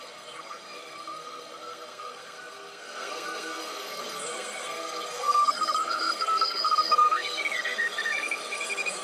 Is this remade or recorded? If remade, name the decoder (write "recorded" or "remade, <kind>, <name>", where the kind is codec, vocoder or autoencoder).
remade, codec, SNAC